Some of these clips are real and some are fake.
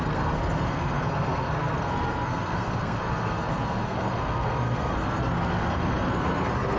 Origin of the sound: fake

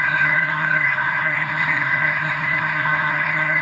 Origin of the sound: fake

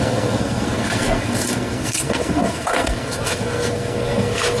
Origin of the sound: fake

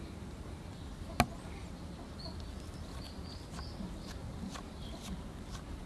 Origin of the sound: real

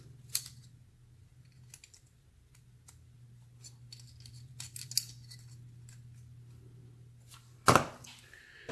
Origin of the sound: real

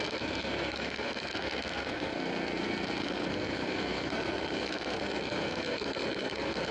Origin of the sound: fake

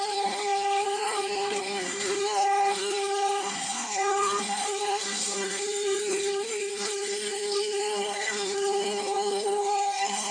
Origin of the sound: fake